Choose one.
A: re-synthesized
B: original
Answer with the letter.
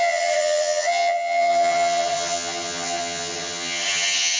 A